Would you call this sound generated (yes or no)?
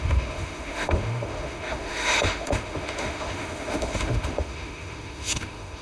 yes